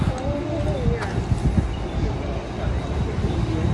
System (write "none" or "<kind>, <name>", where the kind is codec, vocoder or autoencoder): none